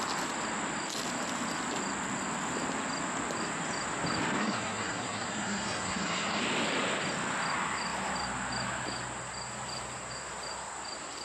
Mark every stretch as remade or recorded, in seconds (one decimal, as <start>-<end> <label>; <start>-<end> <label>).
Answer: 0.0-4.4 recorded; 4.4-6.4 remade; 6.4-11.2 recorded

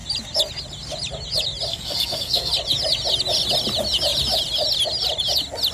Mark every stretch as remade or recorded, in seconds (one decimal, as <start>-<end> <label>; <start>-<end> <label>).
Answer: 0.0-1.7 recorded; 1.7-2.5 remade; 2.5-5.7 recorded